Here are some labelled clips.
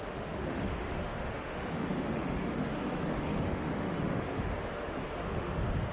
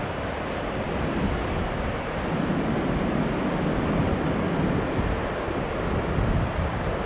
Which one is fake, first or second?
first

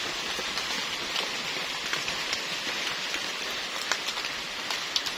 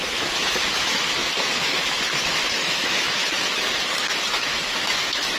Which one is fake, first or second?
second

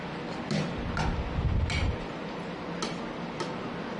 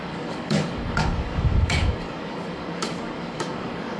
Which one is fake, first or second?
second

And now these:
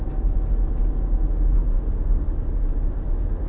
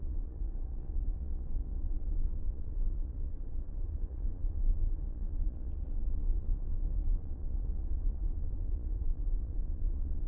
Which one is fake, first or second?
second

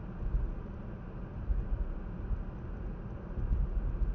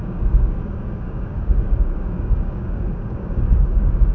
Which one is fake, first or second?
second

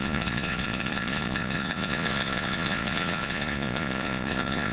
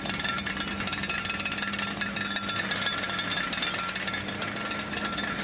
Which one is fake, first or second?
first